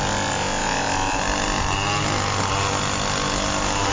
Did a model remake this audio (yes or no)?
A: no